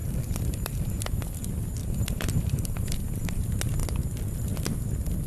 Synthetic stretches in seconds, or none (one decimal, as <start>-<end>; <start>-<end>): 0.0-1.0; 1.8-3.4